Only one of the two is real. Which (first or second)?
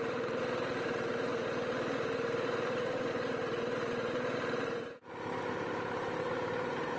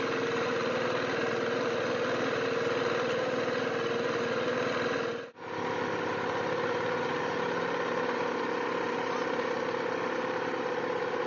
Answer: second